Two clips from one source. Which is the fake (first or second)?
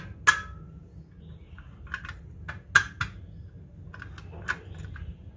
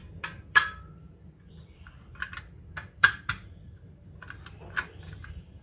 second